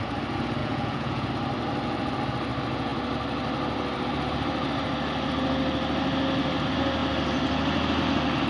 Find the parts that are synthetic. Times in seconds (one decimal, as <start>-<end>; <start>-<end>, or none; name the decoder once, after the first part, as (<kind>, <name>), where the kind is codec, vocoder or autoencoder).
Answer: 0.6-1.3 (vocoder, Vocos)